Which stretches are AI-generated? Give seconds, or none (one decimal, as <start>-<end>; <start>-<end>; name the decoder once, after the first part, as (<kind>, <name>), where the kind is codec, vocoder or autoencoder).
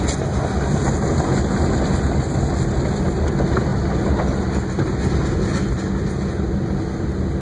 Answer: none